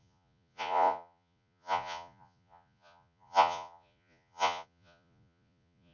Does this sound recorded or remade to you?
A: remade